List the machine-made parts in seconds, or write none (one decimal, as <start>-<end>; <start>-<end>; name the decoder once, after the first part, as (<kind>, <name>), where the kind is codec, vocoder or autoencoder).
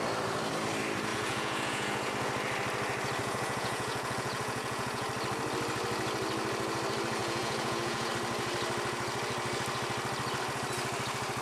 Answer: 1.1-2.1 (vocoder, Vocos); 3.2-5.1; 7.2-8.1